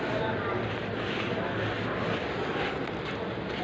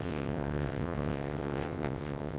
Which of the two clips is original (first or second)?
first